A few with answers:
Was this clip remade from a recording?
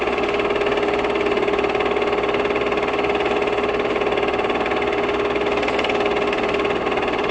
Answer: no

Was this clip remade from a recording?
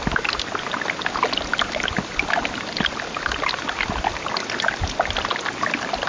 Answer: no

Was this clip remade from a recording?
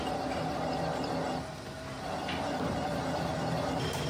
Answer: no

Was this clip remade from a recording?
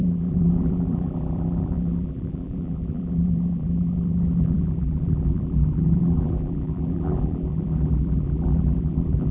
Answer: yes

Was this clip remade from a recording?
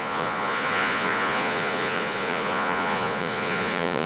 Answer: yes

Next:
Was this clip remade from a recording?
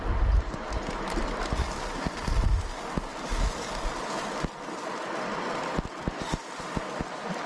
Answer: no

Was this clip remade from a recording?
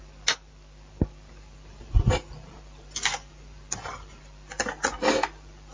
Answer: no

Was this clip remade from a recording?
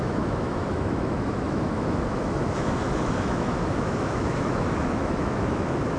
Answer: yes